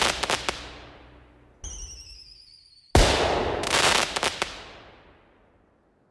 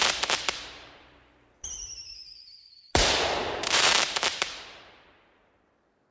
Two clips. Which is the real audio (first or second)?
first